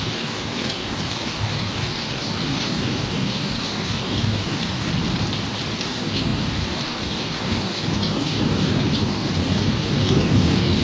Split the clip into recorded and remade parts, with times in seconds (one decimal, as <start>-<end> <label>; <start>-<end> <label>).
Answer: 0.0-4.9 remade; 4.9-5.8 recorded; 5.8-10.8 remade